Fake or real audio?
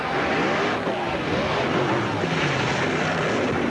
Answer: real